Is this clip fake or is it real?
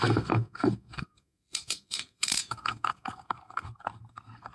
fake